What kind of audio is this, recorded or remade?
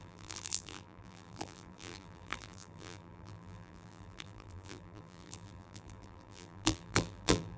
remade